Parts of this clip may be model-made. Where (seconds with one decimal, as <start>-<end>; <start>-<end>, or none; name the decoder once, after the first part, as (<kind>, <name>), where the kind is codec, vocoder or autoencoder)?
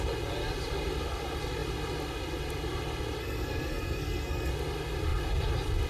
3.2-4.5 (codec, SNAC)